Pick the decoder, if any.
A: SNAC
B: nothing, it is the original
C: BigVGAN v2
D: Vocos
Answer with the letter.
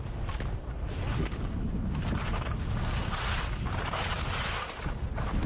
B